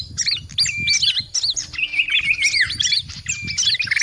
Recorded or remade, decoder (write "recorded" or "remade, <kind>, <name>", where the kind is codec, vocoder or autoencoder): recorded